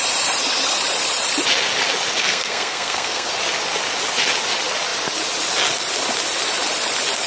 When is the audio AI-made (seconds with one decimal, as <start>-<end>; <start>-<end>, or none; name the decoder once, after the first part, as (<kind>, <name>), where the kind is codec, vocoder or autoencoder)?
2.2-3.3 (codec, SNAC)